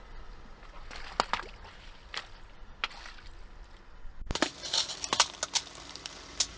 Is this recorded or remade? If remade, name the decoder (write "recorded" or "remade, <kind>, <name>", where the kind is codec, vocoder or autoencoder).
recorded